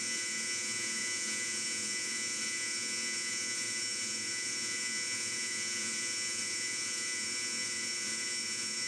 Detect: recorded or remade remade